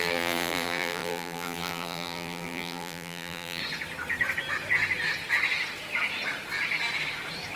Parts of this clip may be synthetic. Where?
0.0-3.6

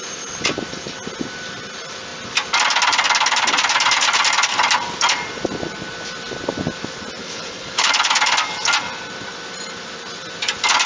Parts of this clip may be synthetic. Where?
7.2-7.9